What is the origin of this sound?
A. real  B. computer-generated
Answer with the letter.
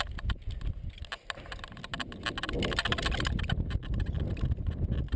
A